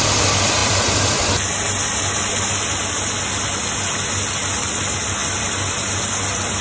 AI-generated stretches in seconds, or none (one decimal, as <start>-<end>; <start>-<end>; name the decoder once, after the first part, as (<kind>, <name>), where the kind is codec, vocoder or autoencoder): 0.6-1.3 (vocoder, BigVGAN v2)

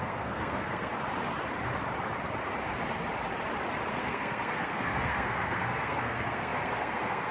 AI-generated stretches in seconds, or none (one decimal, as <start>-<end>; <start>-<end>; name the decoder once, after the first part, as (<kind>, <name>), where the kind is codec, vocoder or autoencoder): 0.0-0.9 (codec, SNAC); 3.9-7.3

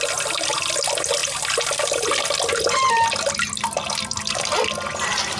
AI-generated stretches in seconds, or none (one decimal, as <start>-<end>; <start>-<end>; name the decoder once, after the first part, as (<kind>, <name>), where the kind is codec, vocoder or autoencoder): none